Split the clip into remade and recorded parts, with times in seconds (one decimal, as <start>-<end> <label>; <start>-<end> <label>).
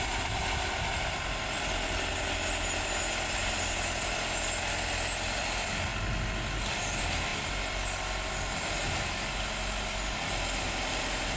0.0-11.4 recorded